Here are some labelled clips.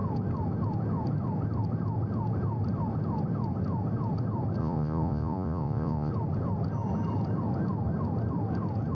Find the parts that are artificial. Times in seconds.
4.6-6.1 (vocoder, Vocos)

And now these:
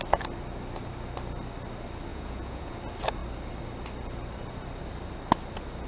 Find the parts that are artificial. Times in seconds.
2.1-2.7 (vocoder, Vocos)

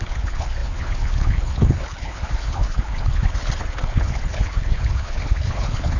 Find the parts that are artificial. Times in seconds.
0.0-6.0 (codec, HILCodec)